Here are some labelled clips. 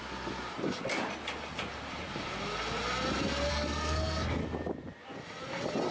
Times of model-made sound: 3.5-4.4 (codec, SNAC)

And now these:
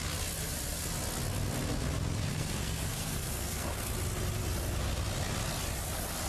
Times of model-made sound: 2.3-3.9 (codec, SNAC)

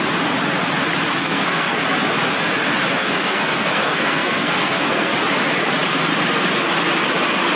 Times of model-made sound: 1.2-1.8 (codec, SNAC); 3.0-5.1

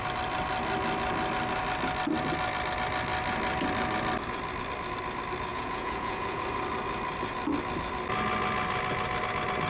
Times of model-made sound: 5.5-6.4 (vocoder, Vocos)

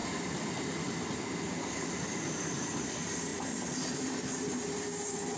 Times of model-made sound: none